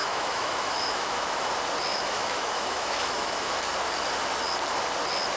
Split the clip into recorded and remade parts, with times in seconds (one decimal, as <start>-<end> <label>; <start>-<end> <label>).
0.0-1.5 remade; 1.5-1.9 recorded; 1.9-3.6 remade; 3.6-5.4 recorded